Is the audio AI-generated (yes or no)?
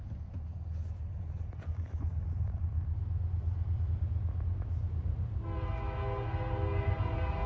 no